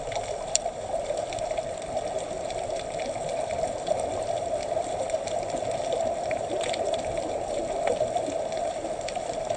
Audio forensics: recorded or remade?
remade